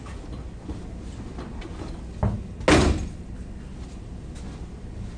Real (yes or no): yes